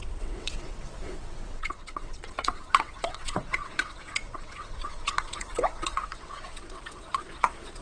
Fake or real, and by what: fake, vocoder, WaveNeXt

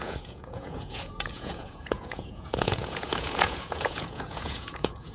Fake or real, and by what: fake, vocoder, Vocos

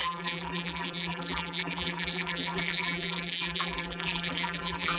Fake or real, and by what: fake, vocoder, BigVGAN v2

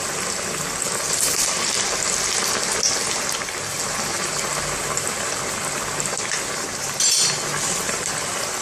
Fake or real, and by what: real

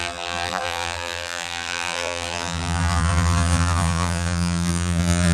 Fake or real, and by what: fake, vocoder, BigVGAN v2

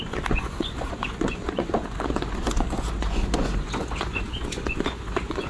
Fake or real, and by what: fake, vocoder, Vocos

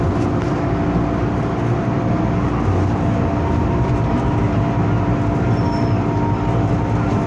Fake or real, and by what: real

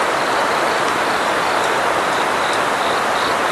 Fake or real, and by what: real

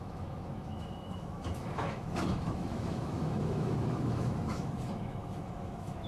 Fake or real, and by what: fake, autoencoder, DAC-VAE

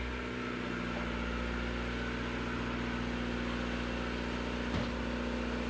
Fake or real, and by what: real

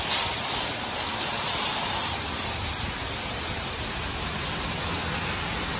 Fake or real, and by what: real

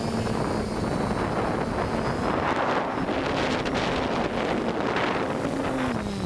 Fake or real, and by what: real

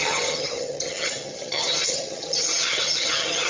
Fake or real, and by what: fake, vocoder, HiFi-GAN